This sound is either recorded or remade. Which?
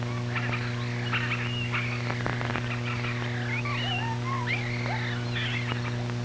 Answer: recorded